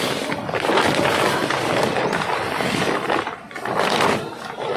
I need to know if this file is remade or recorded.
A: remade